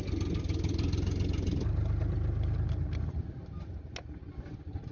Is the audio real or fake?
real